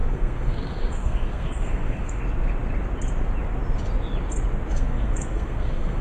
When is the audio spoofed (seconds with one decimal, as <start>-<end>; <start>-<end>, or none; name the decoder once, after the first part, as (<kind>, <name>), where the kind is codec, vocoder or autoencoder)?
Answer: 0.0-2.2 (codec, SNAC); 4.7-6.0